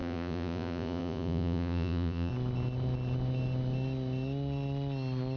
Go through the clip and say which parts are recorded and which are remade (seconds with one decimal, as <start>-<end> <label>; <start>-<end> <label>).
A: 0.0-2.3 remade; 2.3-5.4 recorded

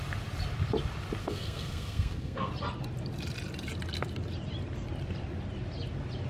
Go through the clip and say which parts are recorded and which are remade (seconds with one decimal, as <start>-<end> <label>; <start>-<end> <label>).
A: 0.0-1.2 recorded; 1.2-2.5 remade; 2.5-6.3 recorded

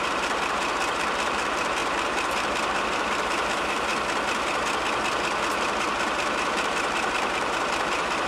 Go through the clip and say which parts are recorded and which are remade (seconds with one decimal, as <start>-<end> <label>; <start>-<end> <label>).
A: 0.0-3.9 remade; 3.9-5.6 recorded; 5.6-8.3 remade